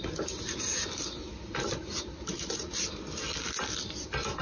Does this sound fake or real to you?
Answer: real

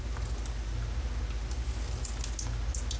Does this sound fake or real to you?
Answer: real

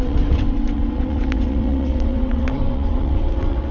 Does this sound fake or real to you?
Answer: fake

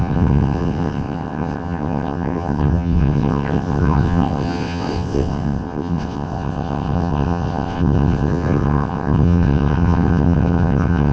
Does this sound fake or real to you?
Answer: fake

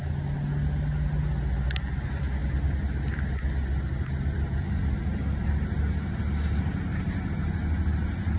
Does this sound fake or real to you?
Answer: real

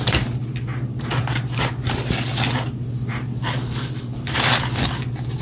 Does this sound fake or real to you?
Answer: real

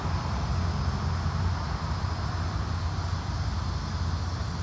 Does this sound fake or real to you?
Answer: real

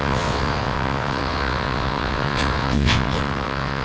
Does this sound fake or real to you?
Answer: fake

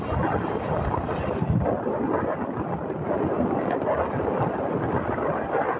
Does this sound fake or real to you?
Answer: real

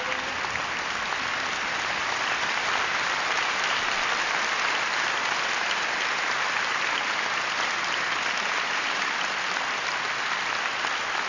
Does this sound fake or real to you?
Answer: real